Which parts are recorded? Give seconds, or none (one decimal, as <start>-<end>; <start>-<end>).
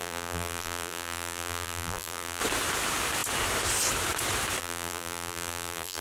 2.4-4.6